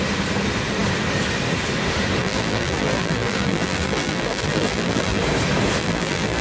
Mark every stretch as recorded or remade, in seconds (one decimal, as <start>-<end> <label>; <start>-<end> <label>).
0.0-2.2 recorded; 2.2-5.2 remade; 5.2-5.8 recorded; 5.8-6.4 remade